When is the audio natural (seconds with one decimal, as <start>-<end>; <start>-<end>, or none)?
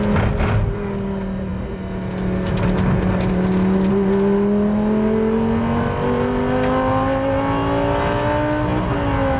0.0-9.4